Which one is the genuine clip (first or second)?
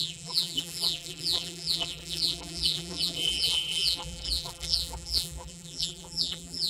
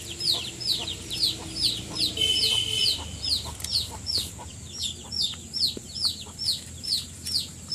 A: second